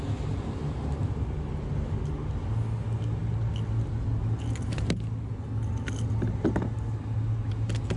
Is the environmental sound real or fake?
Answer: real